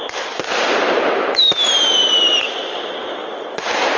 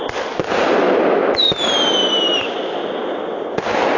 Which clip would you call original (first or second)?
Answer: second